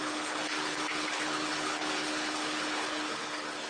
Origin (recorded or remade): remade